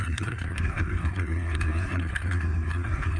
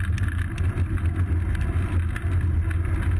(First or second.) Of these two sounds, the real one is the second